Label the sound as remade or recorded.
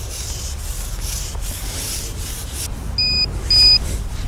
recorded